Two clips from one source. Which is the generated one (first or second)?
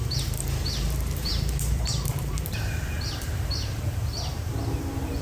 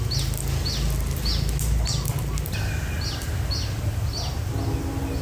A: first